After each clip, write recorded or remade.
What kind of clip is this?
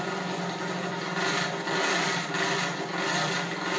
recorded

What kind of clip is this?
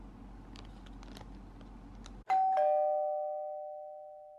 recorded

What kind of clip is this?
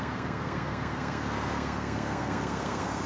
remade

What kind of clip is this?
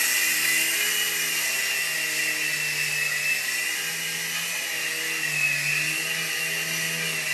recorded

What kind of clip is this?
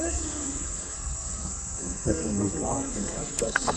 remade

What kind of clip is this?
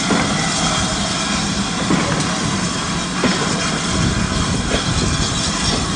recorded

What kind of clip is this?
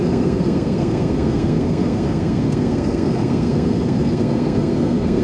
remade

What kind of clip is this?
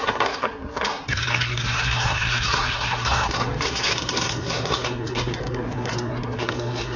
remade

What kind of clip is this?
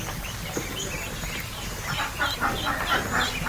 recorded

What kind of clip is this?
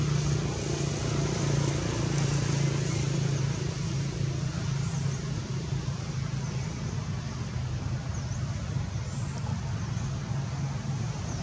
recorded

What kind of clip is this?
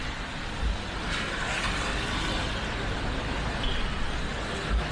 recorded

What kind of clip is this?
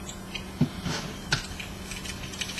recorded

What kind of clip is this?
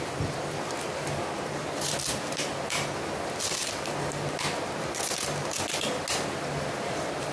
recorded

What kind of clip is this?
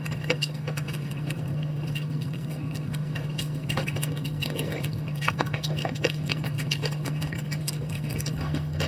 remade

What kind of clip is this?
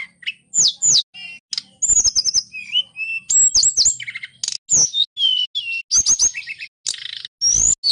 recorded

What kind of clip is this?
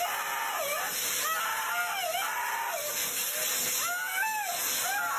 recorded